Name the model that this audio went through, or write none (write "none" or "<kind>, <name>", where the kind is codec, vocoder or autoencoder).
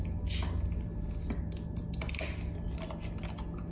none